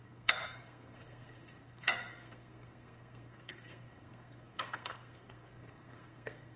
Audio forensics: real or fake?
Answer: fake